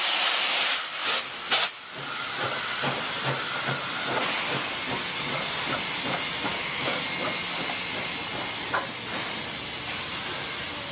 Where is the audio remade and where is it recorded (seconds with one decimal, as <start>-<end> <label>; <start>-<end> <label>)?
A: 0.0-6.5 recorded; 6.5-7.0 remade; 7.0-10.9 recorded